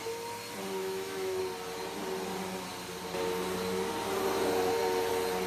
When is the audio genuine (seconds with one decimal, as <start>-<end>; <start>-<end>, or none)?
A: 0.0-0.8; 1.4-5.5